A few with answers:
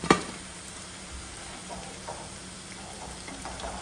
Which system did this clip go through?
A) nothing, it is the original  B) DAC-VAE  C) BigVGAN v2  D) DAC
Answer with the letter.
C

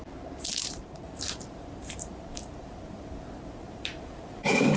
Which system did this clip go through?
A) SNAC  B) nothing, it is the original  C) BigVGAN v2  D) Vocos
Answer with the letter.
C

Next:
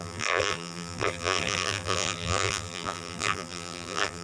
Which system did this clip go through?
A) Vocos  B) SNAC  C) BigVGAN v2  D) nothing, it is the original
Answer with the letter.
C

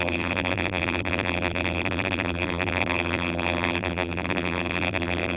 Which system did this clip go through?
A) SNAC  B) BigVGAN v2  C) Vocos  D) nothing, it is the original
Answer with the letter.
B